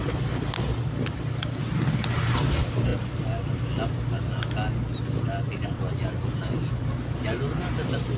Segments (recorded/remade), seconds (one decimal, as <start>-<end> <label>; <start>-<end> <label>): 0.0-8.2 recorded